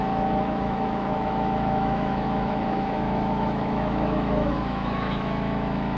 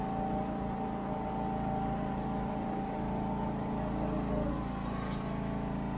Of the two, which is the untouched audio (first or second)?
second